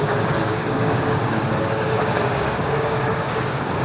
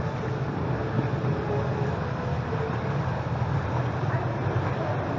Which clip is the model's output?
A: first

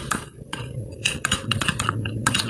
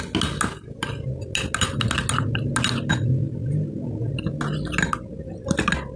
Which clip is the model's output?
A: first